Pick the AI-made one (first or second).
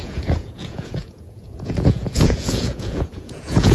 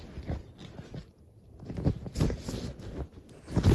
first